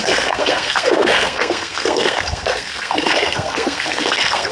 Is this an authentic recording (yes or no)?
no